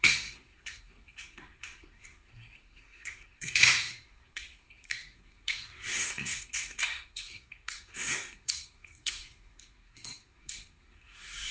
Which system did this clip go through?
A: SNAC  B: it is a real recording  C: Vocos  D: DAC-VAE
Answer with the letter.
A